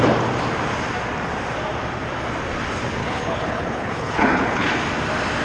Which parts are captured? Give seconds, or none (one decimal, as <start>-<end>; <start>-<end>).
0.0-3.0; 4.7-5.4